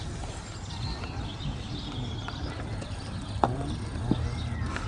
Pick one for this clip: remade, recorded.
recorded